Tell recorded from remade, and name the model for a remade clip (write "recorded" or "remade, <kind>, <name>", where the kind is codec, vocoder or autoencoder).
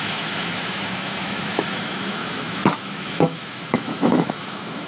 remade, autoencoder, DAC-VAE